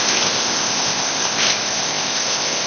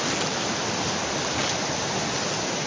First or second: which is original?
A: second